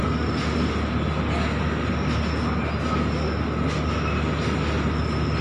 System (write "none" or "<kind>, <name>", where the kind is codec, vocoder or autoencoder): none